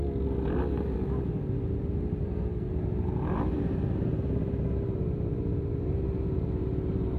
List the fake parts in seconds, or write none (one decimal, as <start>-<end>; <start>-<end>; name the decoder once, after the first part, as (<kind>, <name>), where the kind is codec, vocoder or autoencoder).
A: 2.2-2.7 (codec, SNAC)

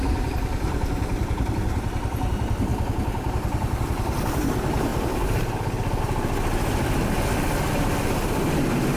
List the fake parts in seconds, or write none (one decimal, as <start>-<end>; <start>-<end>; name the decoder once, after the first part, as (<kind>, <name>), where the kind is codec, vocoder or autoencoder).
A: none

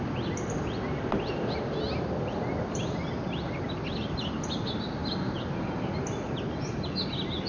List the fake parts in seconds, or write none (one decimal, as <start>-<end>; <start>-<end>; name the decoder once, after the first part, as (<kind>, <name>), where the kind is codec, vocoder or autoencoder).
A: none